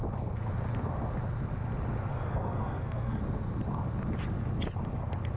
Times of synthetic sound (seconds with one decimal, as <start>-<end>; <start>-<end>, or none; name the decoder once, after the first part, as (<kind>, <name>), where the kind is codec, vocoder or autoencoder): 2.1-3.2 (codec, SNAC)